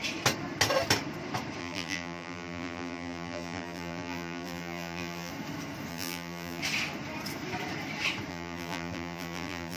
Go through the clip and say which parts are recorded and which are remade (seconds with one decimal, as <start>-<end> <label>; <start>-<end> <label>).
0.0-1.6 recorded; 1.6-5.3 remade; 5.3-5.9 recorded; 5.9-6.6 remade; 6.6-8.3 recorded; 8.3-9.8 remade